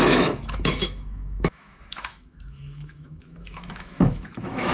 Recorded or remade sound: remade